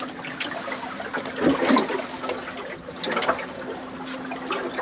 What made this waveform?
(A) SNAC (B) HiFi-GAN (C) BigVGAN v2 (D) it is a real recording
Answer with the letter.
D